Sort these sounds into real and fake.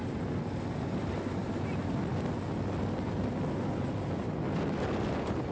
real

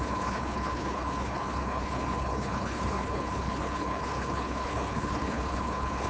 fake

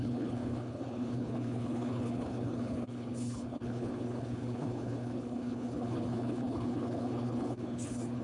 fake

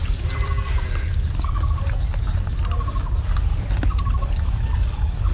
real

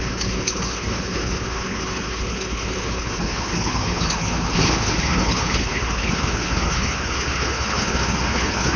fake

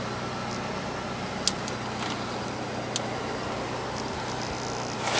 real